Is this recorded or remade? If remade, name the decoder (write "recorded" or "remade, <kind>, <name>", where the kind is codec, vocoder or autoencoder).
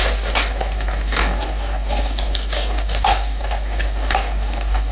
remade, codec, DAC